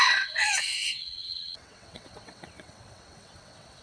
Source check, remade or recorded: remade